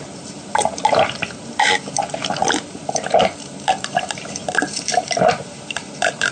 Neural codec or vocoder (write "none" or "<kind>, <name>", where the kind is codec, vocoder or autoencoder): vocoder, BigVGAN v2